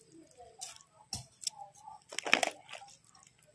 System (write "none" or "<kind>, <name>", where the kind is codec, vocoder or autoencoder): none